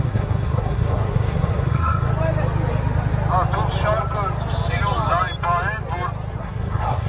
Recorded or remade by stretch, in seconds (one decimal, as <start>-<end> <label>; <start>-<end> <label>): 0.0-2.1 remade; 2.1-6.4 recorded; 6.4-7.1 remade